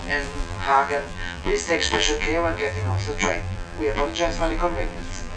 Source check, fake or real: fake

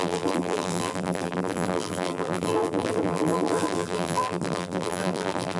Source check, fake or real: fake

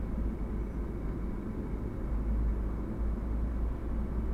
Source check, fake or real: real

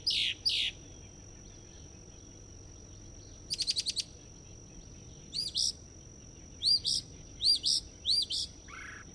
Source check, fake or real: real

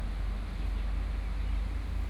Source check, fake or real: real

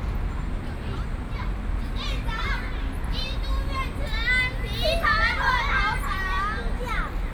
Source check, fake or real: real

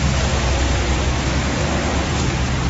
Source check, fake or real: real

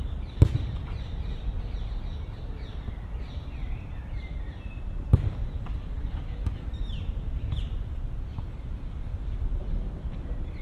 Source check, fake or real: fake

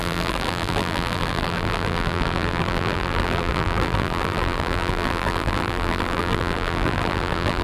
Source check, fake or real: fake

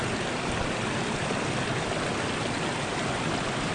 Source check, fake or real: real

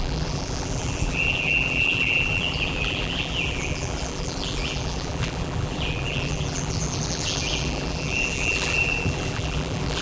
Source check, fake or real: fake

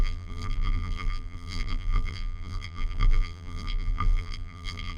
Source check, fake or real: fake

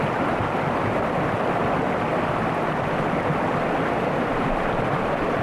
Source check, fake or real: real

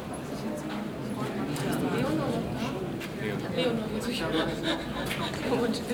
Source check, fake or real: real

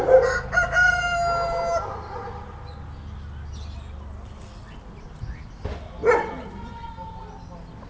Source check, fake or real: real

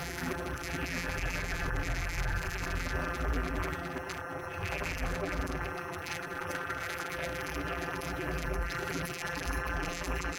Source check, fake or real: fake